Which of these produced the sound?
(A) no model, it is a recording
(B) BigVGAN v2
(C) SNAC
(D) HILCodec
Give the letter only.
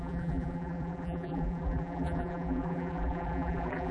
B